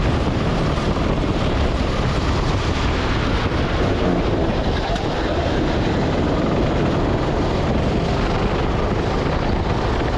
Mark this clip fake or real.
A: real